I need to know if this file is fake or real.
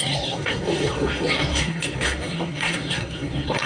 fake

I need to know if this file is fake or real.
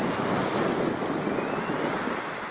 real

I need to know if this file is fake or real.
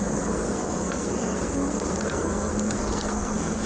fake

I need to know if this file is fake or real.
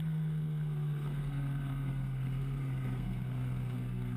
fake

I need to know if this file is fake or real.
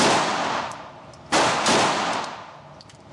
real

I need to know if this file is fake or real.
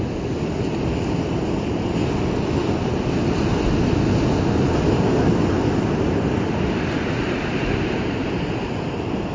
real